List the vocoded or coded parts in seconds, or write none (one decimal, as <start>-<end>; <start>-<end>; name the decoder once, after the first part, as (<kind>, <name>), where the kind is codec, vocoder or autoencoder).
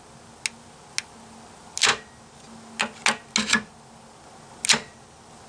none